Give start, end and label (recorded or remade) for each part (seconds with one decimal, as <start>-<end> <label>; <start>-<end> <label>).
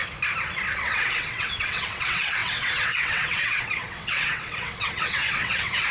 0.0-0.7 recorded; 0.7-5.9 remade